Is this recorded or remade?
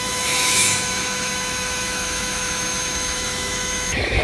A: remade